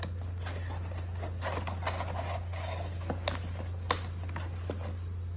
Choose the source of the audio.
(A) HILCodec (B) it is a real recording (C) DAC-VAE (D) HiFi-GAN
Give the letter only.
B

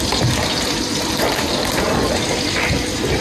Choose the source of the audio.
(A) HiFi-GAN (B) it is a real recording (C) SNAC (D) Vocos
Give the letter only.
B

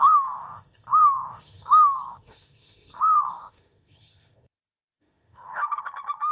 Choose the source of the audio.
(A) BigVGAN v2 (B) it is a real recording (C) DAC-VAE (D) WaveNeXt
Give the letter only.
C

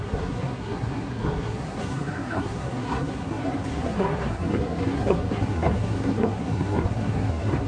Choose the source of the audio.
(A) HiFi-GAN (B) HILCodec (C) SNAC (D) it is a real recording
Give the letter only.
C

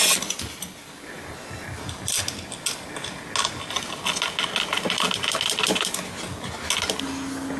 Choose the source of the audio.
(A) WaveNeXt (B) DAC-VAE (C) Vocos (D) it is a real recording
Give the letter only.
D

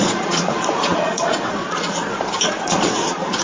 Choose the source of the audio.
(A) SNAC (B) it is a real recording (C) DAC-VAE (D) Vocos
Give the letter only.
D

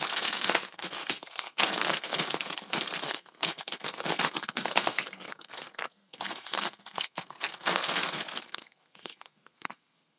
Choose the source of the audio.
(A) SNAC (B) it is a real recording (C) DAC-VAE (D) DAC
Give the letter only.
A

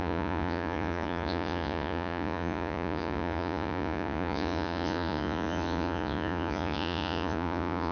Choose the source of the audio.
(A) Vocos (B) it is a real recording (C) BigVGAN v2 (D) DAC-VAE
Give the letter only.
A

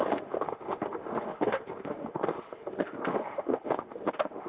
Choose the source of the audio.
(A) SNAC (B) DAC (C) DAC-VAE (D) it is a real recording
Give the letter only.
C